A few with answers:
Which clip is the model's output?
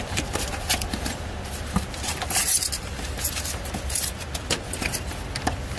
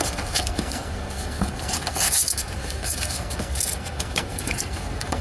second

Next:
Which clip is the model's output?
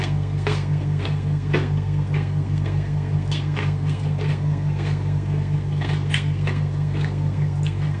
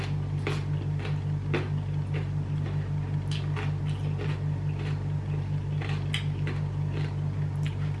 first